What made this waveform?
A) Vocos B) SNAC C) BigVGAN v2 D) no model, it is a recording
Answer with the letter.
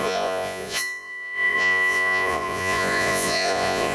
A